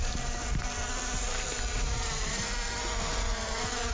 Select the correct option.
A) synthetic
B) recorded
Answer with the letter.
B